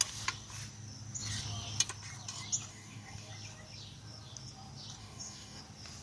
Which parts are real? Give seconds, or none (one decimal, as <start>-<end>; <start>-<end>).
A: 0.0-2.7; 3.3-5.0; 5.6-6.0